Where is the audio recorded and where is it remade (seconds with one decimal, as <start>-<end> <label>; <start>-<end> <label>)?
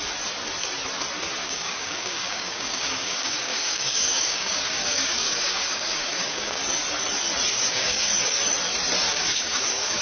0.0-1.4 recorded; 1.4-6.6 remade; 6.6-7.5 recorded; 7.5-8.1 remade; 8.1-9.1 recorded; 9.1-10.0 remade